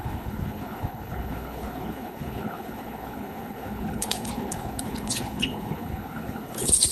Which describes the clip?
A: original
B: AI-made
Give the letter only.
B